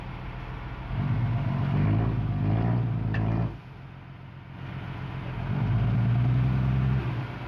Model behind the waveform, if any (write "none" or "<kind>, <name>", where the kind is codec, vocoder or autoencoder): none